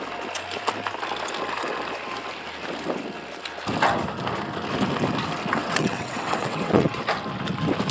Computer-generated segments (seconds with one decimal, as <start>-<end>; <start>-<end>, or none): 5.6-7.0